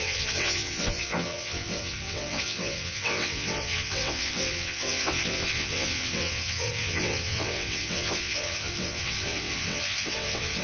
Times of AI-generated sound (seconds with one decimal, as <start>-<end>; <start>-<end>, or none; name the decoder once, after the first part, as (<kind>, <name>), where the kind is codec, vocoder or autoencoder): 0.0-10.6 (vocoder, WaveNeXt)